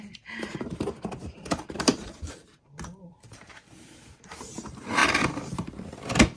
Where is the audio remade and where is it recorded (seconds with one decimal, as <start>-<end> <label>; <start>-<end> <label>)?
0.0-5.0 remade; 5.0-6.4 recorded